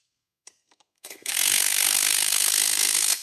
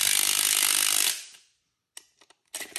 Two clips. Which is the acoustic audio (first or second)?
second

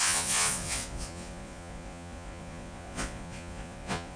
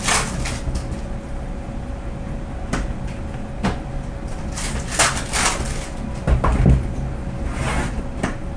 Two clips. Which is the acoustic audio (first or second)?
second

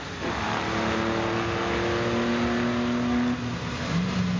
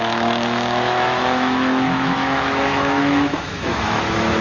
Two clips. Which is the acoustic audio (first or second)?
first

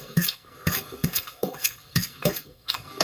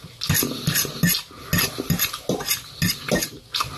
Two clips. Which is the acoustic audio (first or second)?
second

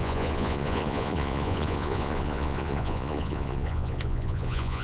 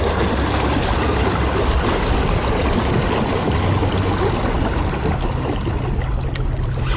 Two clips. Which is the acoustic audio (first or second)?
second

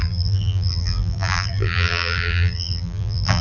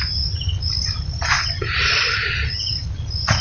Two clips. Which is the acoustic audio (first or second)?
second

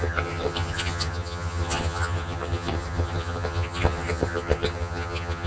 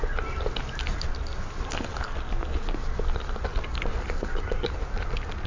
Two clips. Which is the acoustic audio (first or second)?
second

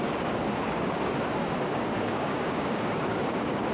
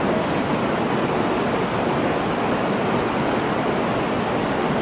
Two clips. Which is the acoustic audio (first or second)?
second